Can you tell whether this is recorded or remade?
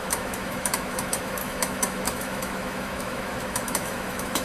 remade